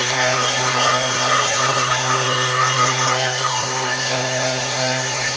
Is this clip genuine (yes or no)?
no